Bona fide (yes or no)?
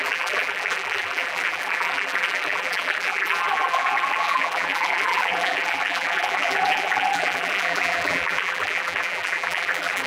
no